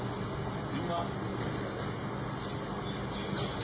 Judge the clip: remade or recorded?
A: recorded